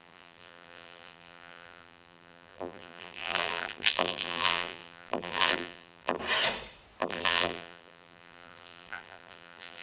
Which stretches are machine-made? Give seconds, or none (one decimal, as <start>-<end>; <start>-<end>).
0.0-6.2; 7.0-9.8